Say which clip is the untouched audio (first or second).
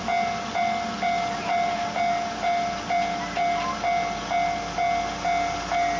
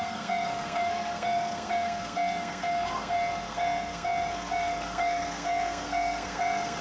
first